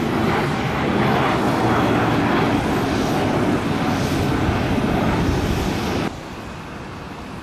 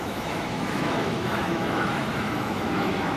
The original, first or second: first